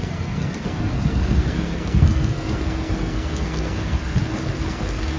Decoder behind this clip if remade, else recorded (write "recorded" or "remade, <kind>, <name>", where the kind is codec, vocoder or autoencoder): remade, codec, SNAC